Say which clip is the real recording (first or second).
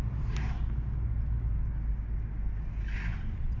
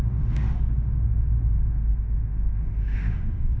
first